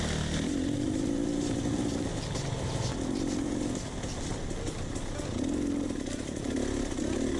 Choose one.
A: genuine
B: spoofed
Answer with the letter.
A